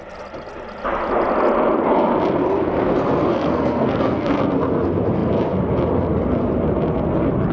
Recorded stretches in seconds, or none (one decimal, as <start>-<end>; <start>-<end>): 0.0-3.3; 4.4-7.5